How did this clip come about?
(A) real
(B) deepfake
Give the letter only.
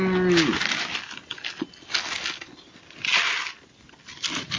A